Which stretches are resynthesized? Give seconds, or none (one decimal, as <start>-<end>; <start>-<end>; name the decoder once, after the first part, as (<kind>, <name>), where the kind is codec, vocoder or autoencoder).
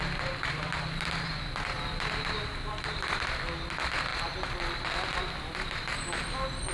none